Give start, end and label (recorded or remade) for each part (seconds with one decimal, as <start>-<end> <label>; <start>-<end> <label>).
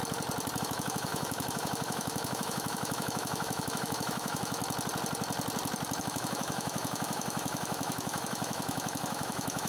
0.0-0.6 recorded; 0.6-4.6 remade; 4.6-6.0 recorded; 6.0-9.7 remade